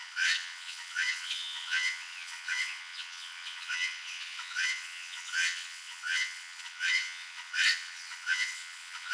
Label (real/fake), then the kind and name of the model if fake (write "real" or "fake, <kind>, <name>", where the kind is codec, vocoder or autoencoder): fake, vocoder, WaveNeXt